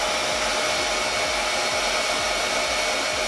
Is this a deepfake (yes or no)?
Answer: no